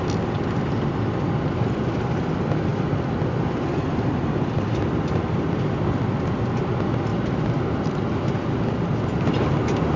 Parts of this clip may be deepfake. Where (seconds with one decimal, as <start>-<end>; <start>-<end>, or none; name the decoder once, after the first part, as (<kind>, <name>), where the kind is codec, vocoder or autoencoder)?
none